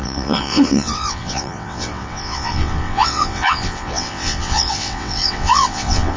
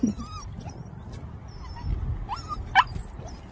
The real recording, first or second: second